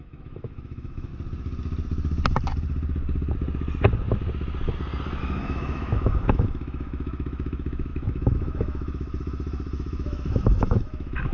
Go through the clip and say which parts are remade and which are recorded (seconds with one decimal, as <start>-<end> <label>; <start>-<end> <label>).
0.0-1.1 remade; 1.1-5.2 recorded; 5.2-11.3 remade